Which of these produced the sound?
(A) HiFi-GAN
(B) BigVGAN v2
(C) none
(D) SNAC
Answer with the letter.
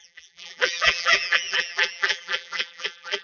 B